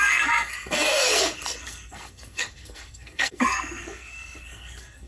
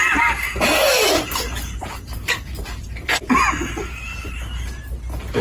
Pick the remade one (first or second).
first